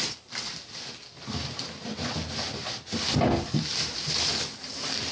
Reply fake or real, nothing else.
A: real